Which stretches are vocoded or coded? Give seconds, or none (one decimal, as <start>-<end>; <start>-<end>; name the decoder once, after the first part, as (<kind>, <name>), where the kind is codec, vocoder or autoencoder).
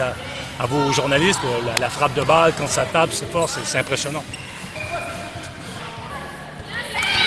none